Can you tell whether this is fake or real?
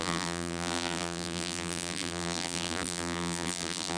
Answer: fake